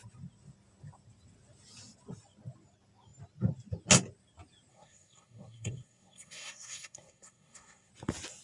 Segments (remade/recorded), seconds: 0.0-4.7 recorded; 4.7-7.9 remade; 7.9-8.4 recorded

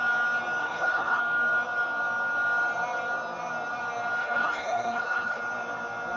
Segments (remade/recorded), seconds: 0.0-0.6 recorded; 0.6-1.2 remade; 1.2-4.2 recorded; 4.2-5.4 remade; 5.4-6.2 recorded